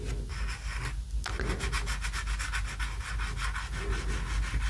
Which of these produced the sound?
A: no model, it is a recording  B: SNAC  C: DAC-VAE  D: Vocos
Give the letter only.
A